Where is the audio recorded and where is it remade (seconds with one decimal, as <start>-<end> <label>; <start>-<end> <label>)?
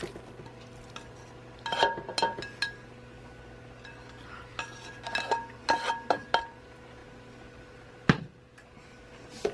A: 0.0-9.5 recorded